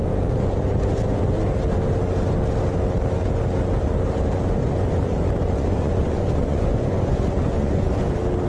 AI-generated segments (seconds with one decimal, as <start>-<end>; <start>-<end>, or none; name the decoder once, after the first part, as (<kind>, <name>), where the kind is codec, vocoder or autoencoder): 5.4-7.9 (vocoder, Vocos)